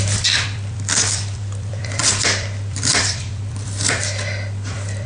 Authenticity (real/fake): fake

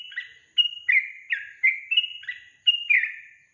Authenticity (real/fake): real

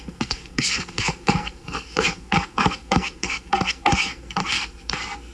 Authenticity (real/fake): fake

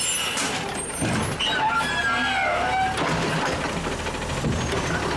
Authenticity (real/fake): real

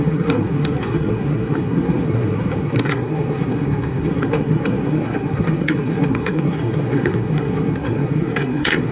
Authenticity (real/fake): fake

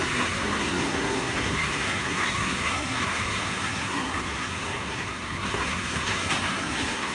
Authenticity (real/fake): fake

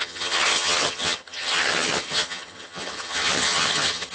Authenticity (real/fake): fake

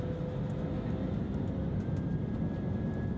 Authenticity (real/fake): real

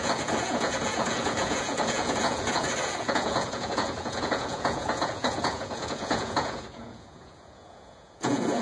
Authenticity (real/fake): fake